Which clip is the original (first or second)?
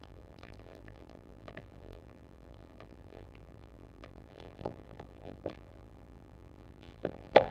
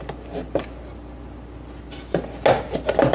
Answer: second